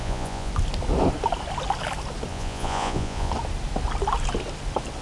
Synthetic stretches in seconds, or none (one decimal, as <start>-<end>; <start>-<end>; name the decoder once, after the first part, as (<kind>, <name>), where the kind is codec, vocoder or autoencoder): 0.0-0.5 (vocoder, Vocos); 2.3-3.3